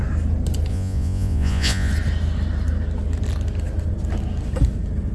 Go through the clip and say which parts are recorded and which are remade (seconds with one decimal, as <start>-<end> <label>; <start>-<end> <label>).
0.0-0.7 recorded; 0.7-1.9 remade; 1.9-5.1 recorded